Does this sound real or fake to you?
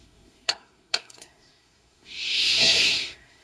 fake